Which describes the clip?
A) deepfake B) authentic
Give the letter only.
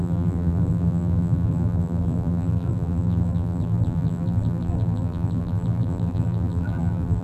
A